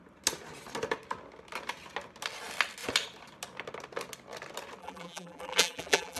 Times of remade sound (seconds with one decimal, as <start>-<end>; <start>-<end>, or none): 4.8-6.2